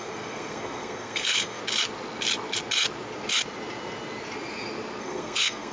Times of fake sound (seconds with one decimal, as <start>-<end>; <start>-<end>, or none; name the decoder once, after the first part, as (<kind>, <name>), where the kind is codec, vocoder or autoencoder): 0.0-1.6 (codec, SNAC); 5.0-5.7